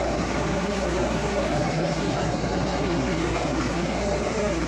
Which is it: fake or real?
fake